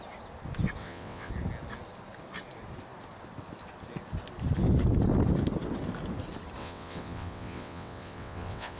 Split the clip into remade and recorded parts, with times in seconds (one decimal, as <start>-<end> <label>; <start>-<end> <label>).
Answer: 0.0-0.8 recorded; 0.8-1.3 remade; 1.3-6.6 recorded; 6.6-8.8 remade